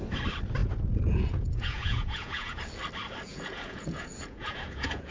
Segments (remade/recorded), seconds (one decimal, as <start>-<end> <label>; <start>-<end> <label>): 0.0-0.6 recorded; 0.6-2.6 remade; 2.6-3.3 recorded; 3.3-5.1 remade